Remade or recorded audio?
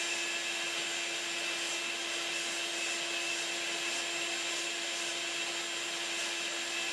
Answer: recorded